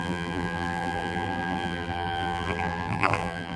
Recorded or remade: remade